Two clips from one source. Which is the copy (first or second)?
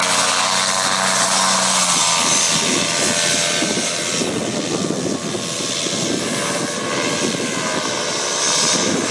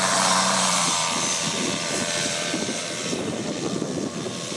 second